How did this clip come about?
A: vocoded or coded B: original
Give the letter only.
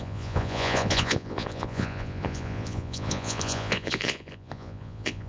A